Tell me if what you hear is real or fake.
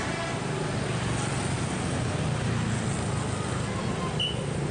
real